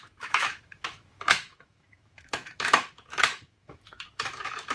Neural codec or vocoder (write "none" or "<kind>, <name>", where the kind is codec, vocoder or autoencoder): autoencoder, DAC-VAE